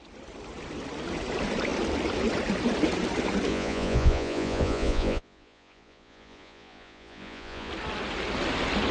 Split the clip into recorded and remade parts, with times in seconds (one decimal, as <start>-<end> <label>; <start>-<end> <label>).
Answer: 0.0-3.5 recorded; 3.5-7.7 remade; 7.7-8.9 recorded